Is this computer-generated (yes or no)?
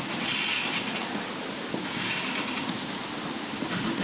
no